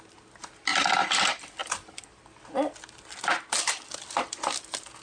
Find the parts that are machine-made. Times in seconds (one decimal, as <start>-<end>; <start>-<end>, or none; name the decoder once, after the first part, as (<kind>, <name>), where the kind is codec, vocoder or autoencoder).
none